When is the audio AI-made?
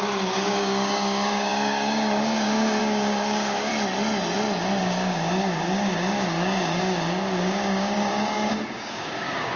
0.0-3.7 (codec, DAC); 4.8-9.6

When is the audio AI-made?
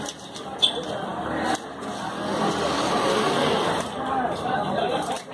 none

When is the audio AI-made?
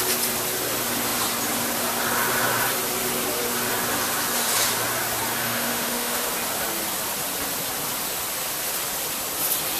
5.4-6.3 (autoencoder, DAC-VAE)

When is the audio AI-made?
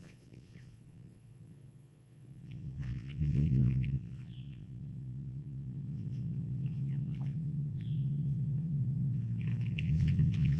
0.0-10.6 (vocoder, Vocos)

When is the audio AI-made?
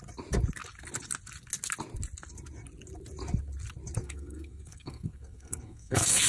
4.0-6.3 (codec, SNAC)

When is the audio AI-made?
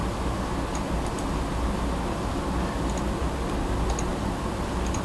none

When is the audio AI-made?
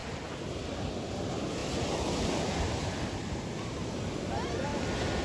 none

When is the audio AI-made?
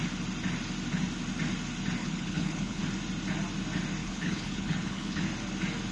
2.0-2.8 (codec, HILCodec); 4.0-5.2